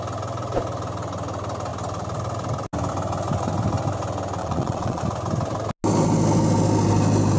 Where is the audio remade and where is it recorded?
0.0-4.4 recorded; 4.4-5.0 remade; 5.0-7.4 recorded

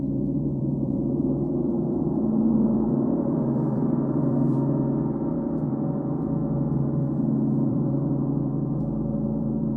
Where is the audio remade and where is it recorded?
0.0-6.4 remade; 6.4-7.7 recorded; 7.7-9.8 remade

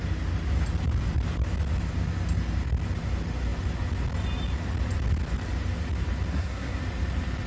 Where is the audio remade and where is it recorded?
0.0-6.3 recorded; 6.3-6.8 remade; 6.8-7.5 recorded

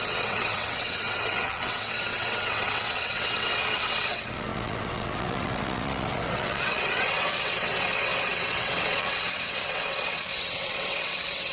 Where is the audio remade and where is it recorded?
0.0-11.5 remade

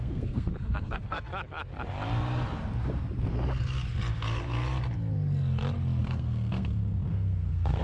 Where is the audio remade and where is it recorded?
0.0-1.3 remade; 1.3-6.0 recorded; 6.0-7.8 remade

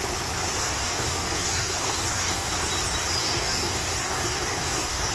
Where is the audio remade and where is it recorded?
0.0-0.6 recorded; 0.6-2.5 remade; 2.5-3.2 recorded; 3.2-5.1 remade

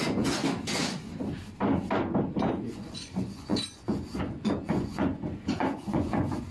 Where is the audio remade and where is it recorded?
0.0-0.4 remade; 0.4-2.5 recorded; 2.5-6.5 remade

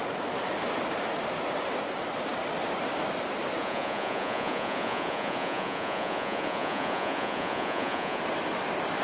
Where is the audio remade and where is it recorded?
0.0-3.6 recorded; 3.6-8.2 remade; 8.2-9.0 recorded